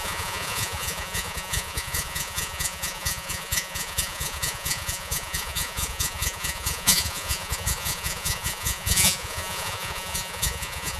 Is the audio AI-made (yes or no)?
yes